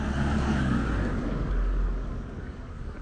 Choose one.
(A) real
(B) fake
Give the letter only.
B